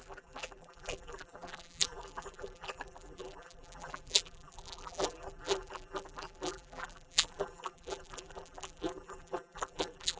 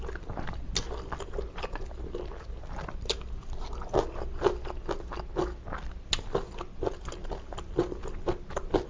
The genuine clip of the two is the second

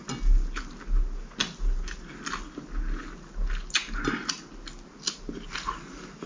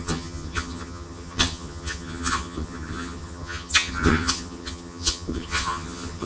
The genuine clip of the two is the first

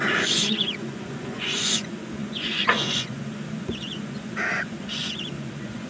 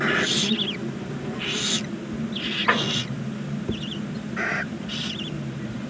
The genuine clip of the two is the second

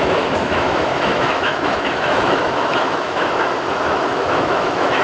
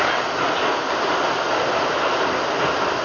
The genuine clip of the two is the second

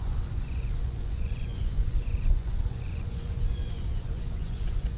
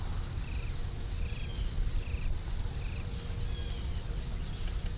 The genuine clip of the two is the second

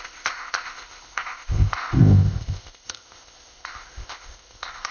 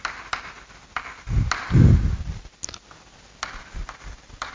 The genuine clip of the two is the second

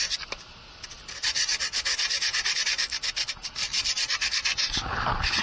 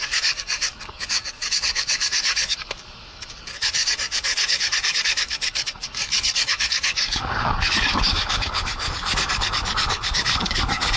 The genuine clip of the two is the first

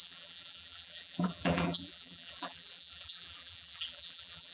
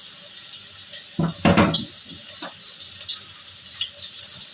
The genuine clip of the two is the second